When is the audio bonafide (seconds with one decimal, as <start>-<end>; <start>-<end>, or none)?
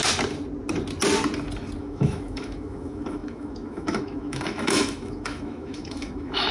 0.0-1.8